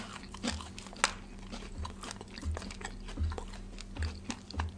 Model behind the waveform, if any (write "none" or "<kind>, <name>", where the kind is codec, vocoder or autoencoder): none